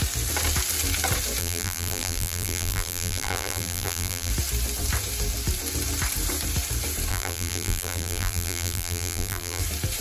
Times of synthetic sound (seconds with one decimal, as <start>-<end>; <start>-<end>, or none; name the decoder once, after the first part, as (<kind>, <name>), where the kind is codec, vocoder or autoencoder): 1.4-4.3 (vocoder, BigVGAN v2); 7.1-9.6